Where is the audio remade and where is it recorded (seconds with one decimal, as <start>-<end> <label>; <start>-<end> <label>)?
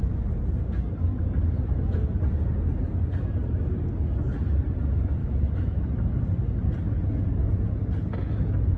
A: 0.0-5.2 recorded; 5.2-5.8 remade; 5.8-8.8 recorded